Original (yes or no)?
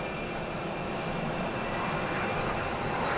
yes